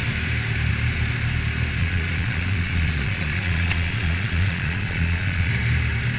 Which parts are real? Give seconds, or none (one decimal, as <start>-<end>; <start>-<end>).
0.0-1.8; 5.5-6.2